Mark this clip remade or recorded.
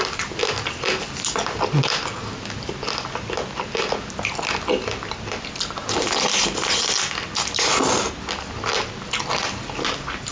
recorded